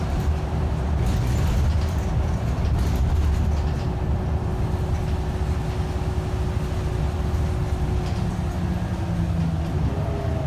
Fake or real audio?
real